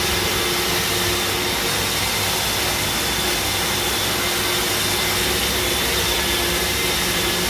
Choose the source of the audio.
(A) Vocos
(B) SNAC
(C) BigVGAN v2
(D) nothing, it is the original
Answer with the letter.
D